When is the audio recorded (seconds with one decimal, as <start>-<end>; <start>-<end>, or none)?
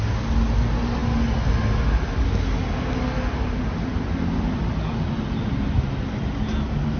0.0-7.0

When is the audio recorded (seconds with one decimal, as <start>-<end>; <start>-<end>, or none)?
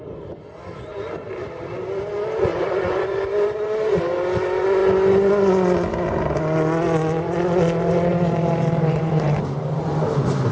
0.0-2.5; 4.1-8.1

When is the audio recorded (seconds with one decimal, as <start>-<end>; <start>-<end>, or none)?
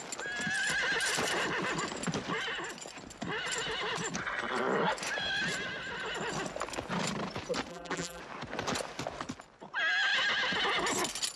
0.0-7.7; 8.2-11.4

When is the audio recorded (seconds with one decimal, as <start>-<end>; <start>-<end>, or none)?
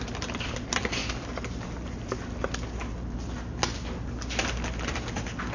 0.0-5.5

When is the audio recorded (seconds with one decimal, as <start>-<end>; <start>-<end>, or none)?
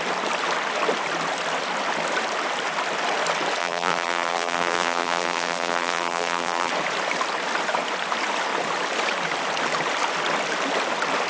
0.0-3.6; 6.7-11.3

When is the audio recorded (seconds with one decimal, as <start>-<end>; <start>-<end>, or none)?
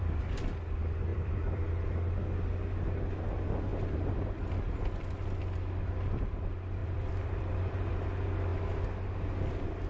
0.0-1.1; 1.8-3.7; 4.5-6.8; 7.9-9.9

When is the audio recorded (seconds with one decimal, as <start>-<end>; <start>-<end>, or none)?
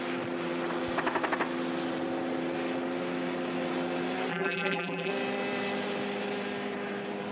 0.0-4.3; 5.1-7.3